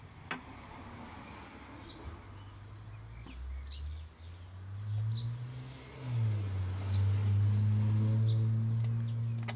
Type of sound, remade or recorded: recorded